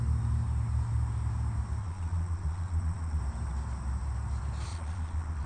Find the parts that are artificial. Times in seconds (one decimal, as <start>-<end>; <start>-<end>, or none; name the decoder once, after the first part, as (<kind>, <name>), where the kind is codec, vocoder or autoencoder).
1.8-3.2 (vocoder, Vocos); 4.7-5.5